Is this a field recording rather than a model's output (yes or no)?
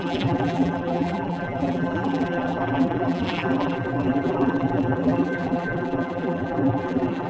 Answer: no